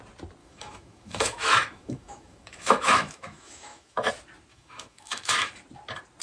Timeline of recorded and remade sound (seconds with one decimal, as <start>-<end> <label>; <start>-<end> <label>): 0.0-0.4 recorded; 0.4-4.1 remade; 4.1-4.5 recorded; 4.5-5.5 remade; 5.5-6.2 recorded